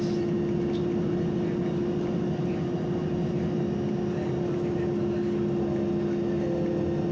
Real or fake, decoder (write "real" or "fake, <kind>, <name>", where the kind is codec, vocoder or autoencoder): real